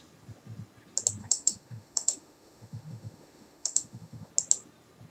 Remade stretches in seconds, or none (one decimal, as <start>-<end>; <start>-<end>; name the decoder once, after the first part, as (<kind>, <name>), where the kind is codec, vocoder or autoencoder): 1.2-4.3 (autoencoder, DAC-VAE)